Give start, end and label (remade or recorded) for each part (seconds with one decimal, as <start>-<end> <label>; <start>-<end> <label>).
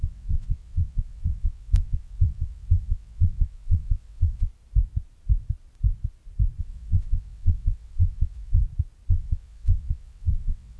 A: 0.0-4.5 remade; 4.5-6.6 recorded; 6.6-8.6 remade; 8.6-9.1 recorded; 9.1-10.8 remade